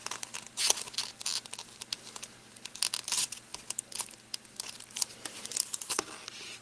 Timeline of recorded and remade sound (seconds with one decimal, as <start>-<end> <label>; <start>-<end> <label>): 0.0-6.6 recorded